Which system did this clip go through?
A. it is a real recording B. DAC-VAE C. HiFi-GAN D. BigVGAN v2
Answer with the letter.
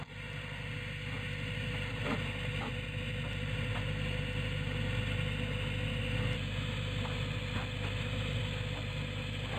A